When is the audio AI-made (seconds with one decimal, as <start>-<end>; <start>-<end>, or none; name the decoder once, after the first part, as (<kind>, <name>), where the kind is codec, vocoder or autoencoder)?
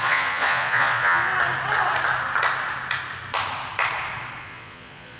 0.0-1.3 (vocoder, Vocos); 4.4-5.2